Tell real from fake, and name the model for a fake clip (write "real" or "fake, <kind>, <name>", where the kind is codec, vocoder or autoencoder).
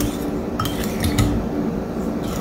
real